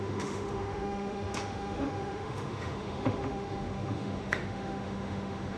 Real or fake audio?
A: fake